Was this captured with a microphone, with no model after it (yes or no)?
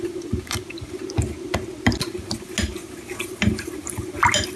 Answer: yes